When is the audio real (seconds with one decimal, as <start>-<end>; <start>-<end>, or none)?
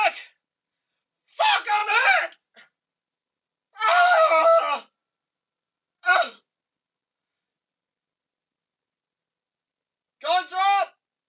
0.0-5.0; 7.4-11.3